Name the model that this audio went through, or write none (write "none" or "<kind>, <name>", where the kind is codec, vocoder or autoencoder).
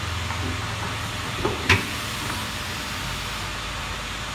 none